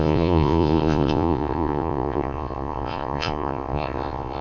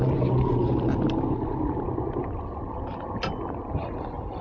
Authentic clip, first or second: second